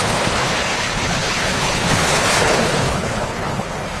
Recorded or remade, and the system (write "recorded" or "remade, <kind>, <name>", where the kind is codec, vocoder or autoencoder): remade, codec, HILCodec